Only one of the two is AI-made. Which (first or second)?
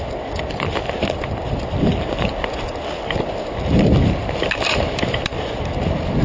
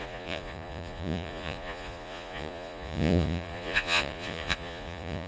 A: second